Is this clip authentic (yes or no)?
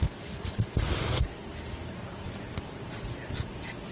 yes